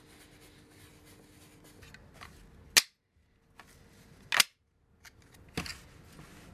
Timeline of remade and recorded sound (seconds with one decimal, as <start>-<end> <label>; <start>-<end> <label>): 0.0-6.5 recorded